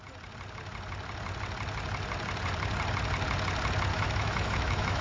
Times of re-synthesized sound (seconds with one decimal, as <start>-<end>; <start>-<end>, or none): 3.9-5.0